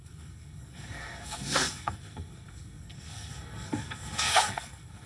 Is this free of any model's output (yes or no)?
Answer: no